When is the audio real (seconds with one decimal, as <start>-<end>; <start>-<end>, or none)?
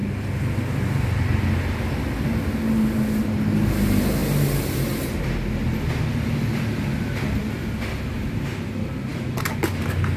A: 0.0-10.2